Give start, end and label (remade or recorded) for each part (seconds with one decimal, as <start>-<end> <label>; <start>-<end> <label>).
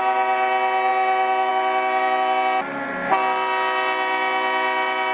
0.0-5.1 recorded